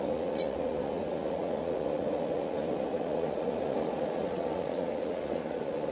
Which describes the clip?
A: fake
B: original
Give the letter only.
A